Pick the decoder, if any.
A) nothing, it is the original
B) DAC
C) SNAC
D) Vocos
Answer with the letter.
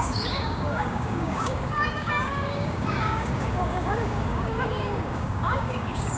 B